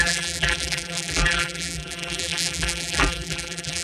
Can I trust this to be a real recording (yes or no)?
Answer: no